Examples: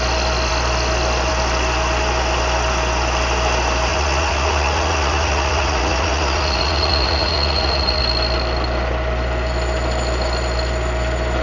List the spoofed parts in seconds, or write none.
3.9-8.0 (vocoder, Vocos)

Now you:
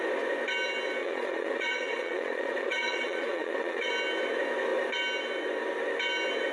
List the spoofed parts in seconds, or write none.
1.0-3.9 (vocoder, Vocos)

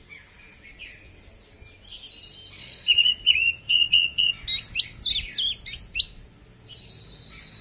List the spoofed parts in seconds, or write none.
2.6-4.3 (vocoder, Vocos)

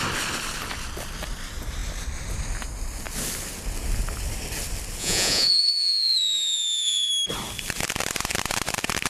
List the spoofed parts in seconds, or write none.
5.0-7.1 (vocoder, Vocos)

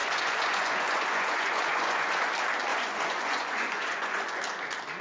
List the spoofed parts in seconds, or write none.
0.0-2.3 (vocoder, Vocos); 2.7-4.4

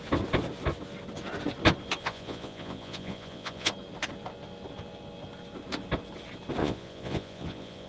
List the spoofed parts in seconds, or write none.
2.0-3.7 (vocoder, Vocos); 6.6-7.9

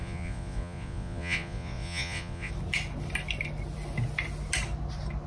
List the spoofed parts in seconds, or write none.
0.0-2.5 (vocoder, Vocos)